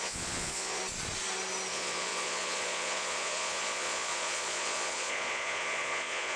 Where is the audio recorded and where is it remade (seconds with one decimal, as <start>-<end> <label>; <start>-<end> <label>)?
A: 0.0-0.8 remade; 0.8-1.7 recorded; 1.7-6.4 remade